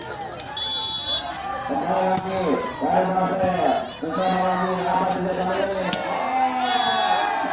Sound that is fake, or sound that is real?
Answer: real